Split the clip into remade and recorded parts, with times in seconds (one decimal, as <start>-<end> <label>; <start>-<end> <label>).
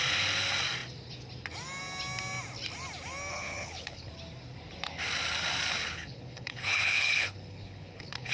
0.0-3.3 recorded; 3.3-4.1 remade; 4.1-5.8 recorded; 5.8-8.3 remade